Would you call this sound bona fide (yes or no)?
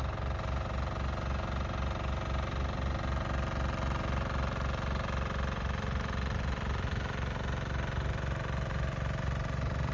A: yes